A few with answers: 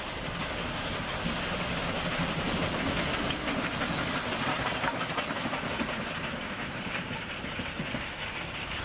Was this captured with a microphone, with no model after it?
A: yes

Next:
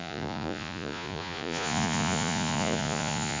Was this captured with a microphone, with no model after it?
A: no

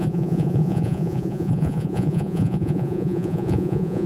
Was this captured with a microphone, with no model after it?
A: no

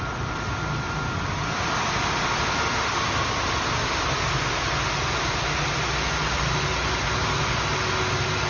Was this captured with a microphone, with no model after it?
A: yes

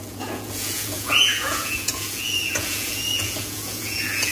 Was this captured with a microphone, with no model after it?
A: no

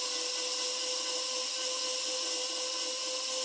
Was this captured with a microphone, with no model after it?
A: yes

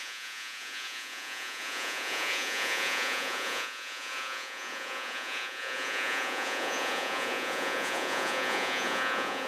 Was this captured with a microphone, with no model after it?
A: no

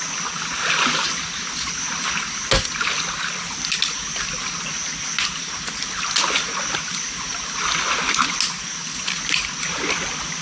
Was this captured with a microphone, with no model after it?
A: yes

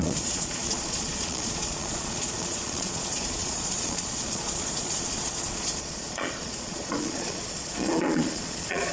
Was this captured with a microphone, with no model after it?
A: no